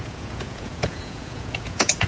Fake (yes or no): yes